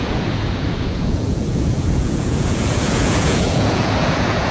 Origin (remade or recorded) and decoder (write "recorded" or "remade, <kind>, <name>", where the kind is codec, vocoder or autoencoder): remade, vocoder, Vocos